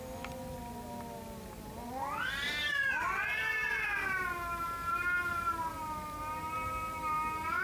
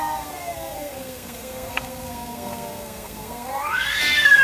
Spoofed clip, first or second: second